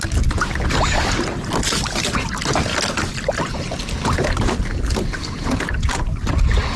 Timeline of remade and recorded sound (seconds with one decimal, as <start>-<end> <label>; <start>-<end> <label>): 0.0-6.8 recorded